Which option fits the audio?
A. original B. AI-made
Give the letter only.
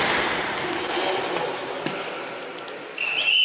A